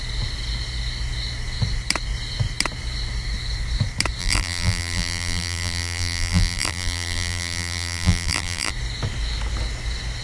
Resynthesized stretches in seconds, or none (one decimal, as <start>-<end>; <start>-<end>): 4.2-8.7